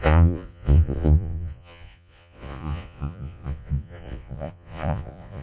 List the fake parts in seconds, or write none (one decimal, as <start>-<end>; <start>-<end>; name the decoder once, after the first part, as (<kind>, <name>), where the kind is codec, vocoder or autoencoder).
0.0-5.4 (vocoder, Vocos)